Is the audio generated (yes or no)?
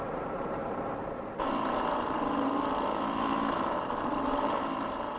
yes